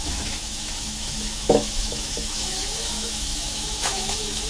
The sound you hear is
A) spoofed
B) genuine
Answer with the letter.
A